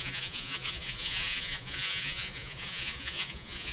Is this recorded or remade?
remade